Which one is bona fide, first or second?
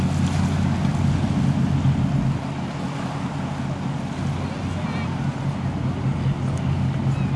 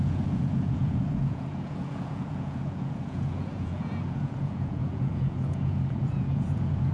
first